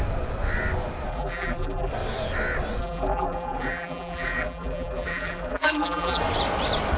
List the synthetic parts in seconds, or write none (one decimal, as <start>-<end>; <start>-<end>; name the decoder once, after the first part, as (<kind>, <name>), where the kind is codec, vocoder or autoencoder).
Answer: 1.1-1.9 (vocoder, BigVGAN v2); 2.8-6.2